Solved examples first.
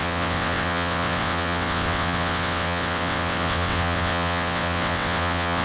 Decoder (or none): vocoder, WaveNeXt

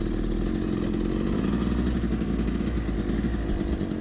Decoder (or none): none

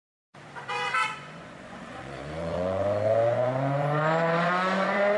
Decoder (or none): vocoder, Vocos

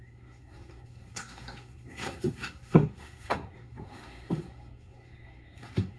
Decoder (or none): codec, SNAC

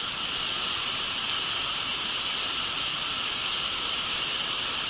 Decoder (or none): none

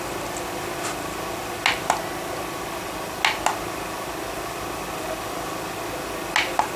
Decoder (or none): none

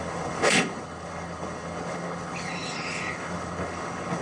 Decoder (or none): codec, HILCodec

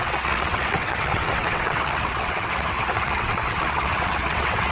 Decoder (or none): vocoder, WaveNeXt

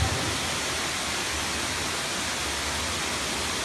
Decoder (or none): none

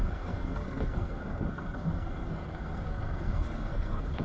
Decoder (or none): codec, SNAC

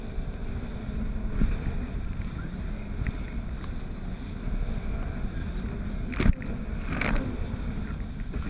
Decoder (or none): none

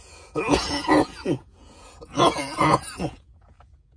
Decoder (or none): vocoder, Vocos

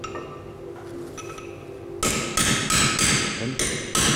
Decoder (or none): none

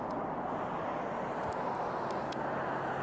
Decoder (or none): none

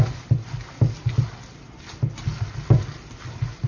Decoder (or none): none